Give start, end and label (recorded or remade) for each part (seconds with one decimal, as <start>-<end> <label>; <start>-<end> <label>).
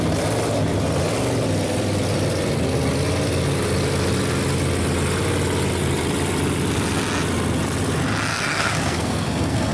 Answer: 0.0-8.3 recorded; 8.3-9.7 remade